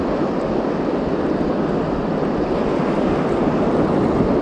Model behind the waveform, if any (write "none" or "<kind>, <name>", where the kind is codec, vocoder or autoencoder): none